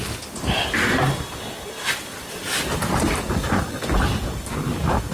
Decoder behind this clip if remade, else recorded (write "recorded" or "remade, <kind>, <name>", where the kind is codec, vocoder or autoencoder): recorded